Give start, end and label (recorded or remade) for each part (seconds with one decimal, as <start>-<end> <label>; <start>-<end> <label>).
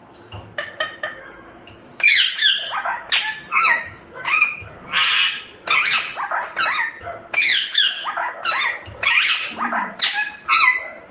0.0-4.7 remade; 4.7-7.5 recorded; 7.5-8.1 remade; 8.1-11.1 recorded